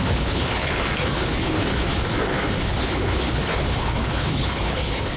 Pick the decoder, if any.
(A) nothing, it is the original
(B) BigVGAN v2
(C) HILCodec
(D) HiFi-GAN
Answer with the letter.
C